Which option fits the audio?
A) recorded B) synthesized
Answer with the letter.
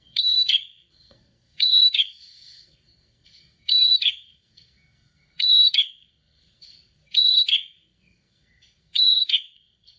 B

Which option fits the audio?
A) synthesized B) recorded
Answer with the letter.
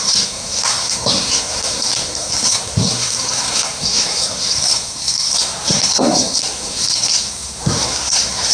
A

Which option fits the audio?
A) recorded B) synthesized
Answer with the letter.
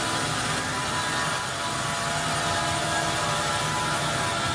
A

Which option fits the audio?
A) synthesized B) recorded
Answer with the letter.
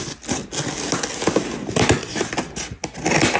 B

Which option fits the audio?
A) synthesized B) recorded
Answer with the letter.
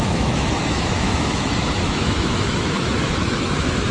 A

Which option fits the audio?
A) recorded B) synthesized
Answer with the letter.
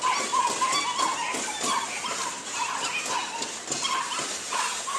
A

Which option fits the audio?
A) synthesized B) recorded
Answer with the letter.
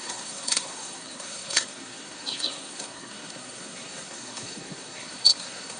A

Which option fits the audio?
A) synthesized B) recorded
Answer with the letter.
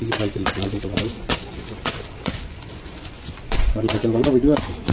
A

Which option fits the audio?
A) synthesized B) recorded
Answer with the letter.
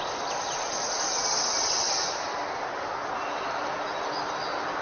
B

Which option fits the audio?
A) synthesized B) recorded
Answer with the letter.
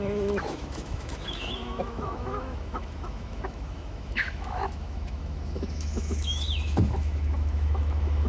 A